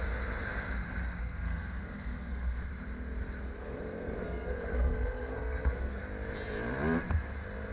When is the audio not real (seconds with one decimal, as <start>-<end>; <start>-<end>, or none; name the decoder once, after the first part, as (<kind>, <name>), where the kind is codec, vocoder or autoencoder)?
1.2-2.7 (codec, SNAC); 3.5-6.0